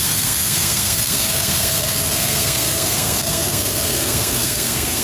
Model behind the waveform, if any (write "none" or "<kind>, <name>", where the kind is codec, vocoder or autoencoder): codec, SNAC